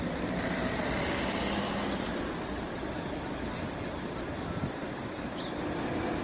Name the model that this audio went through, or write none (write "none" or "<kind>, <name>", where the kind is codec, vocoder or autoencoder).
vocoder, BigVGAN v2